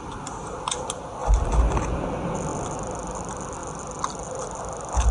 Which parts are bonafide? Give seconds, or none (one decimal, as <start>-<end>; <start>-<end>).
0.0-5.1